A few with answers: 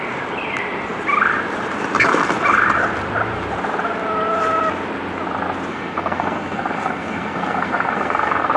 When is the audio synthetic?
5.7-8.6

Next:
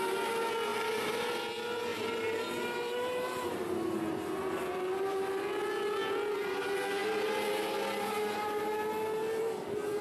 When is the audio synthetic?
0.7-1.3; 1.9-3.7

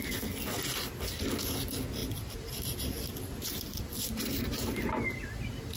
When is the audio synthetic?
2.0-5.8

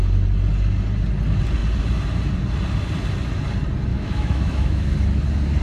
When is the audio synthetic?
3.9-4.9

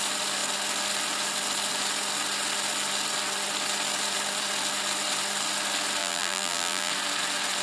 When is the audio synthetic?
6.0-6.9

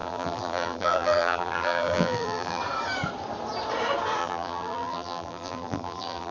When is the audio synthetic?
0.0-2.6; 4.2-6.3

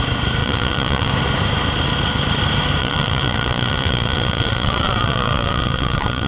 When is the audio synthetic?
0.4-1.1; 2.8-6.3